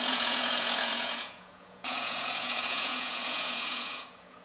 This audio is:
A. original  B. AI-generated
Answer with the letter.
B